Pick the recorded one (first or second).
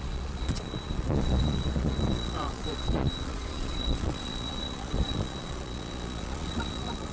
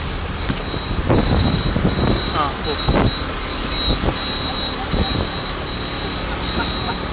second